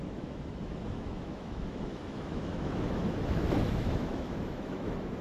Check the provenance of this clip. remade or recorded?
remade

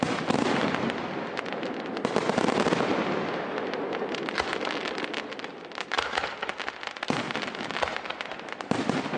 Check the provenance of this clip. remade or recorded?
recorded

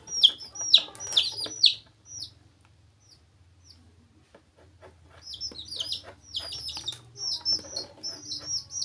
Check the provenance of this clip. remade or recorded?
recorded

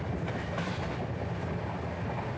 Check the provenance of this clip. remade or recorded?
recorded